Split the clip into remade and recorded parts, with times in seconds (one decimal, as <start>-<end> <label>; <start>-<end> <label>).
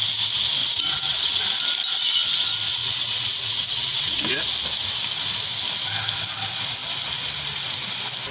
0.0-0.6 recorded; 0.6-1.4 remade; 1.4-2.7 recorded; 2.7-4.3 remade; 4.3-8.3 recorded